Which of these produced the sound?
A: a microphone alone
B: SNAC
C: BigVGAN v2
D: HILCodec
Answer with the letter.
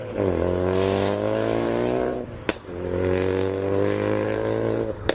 C